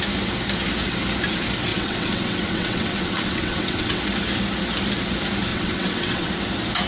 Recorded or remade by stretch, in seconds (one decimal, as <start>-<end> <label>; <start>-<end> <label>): 0.0-1.7 recorded; 1.7-4.0 remade; 4.0-5.5 recorded; 5.5-6.3 remade; 6.3-6.9 recorded